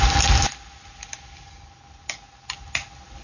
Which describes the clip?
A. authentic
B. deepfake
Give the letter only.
A